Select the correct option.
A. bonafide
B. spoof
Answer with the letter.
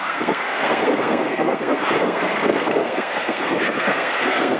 B